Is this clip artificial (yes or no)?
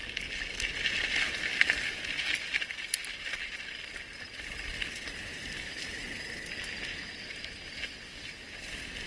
no